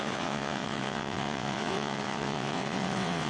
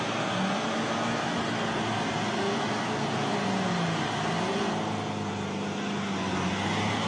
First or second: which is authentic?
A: second